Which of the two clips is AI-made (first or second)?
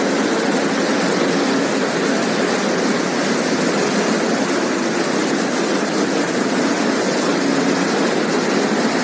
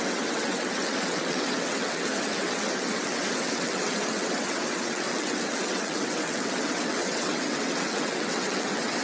second